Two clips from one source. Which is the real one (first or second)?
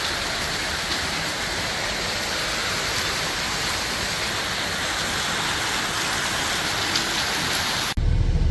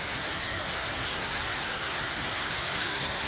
first